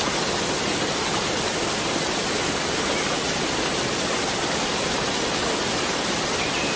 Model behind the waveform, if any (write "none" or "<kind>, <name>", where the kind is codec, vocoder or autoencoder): none